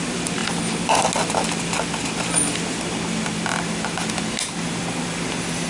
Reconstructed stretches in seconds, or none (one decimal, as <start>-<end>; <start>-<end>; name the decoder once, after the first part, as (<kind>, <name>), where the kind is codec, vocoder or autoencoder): none